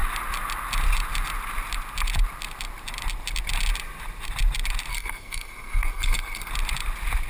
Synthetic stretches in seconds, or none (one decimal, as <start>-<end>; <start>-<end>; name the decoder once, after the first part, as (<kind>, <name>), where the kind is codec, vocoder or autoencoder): 4.9-6.5 (codec, SNAC)